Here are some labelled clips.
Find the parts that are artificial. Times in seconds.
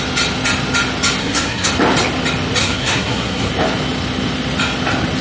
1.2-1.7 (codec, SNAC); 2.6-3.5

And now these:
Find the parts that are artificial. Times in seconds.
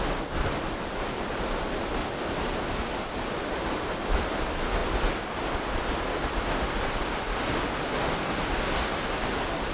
none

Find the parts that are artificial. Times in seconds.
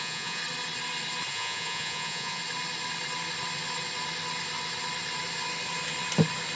0.0-0.4 (vocoder, Vocos); 1.3-2.4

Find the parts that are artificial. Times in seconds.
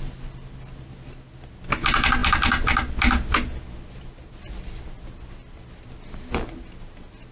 none